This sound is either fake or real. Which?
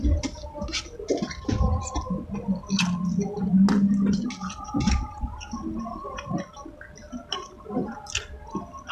real